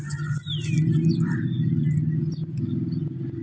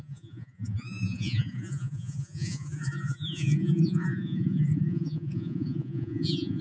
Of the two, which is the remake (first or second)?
second